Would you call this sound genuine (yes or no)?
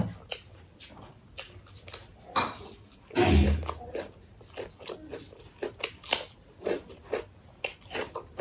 yes